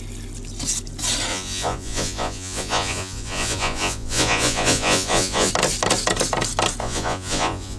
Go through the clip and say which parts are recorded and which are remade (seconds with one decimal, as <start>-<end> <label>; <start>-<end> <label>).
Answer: 0.0-1.3 recorded; 1.3-5.5 remade; 5.5-6.8 recorded; 6.8-7.8 remade